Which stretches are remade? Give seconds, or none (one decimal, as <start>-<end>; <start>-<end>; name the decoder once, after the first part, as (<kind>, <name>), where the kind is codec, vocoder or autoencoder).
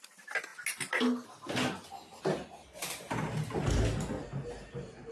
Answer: none